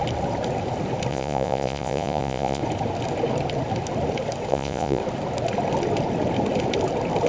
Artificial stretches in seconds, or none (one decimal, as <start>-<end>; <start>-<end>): 1.1-2.6; 4.5-5.0